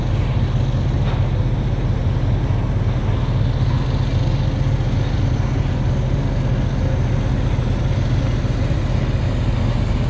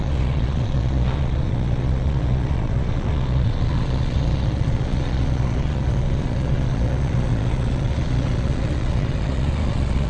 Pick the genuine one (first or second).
first